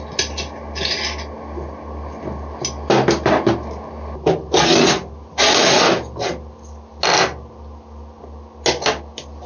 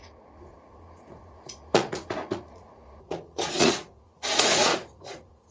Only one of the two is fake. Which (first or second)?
second